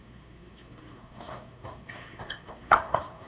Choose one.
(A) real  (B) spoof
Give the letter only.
B